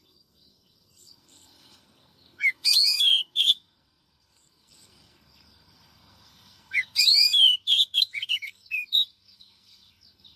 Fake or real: fake